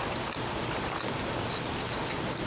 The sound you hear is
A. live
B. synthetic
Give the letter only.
A